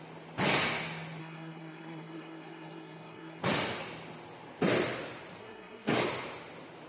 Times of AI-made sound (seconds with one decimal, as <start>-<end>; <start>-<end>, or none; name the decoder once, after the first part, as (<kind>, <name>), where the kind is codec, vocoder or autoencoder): 1.2-3.4 (codec, SNAC); 5.4-6.0